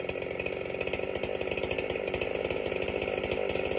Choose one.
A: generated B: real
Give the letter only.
B